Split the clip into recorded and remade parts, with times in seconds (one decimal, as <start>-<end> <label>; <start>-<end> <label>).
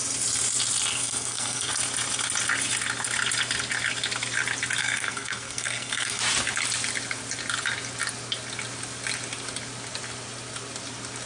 0.0-0.9 recorded; 0.9-1.7 remade; 1.7-4.8 recorded; 4.8-6.2 remade; 6.2-11.3 recorded